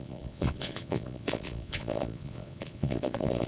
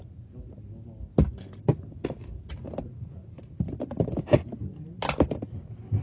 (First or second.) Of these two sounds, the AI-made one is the first